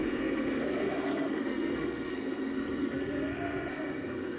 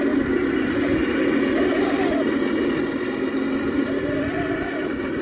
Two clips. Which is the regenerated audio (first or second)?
first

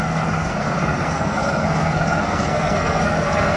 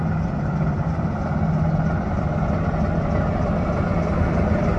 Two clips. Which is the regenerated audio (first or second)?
first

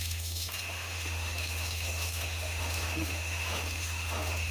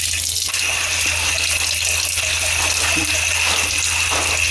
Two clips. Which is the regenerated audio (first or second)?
first